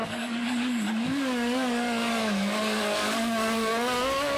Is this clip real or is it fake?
fake